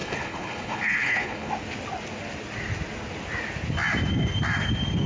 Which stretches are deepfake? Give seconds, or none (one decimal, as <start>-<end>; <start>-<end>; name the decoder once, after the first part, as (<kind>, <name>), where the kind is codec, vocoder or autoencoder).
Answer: 0.0-1.5 (codec, HILCodec)